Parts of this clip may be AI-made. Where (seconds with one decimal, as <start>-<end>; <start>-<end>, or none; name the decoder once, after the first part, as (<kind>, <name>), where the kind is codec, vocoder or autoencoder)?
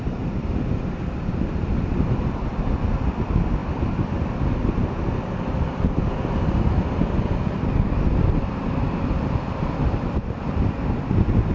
none